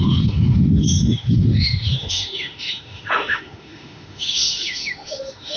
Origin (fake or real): fake